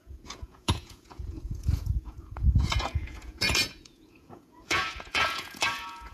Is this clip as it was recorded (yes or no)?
no